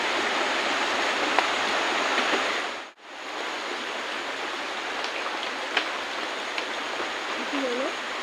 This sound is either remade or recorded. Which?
recorded